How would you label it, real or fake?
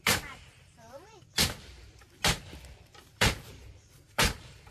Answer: fake